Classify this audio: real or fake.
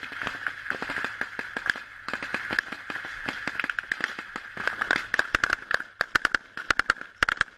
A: real